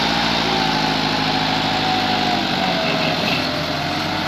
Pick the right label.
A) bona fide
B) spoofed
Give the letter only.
A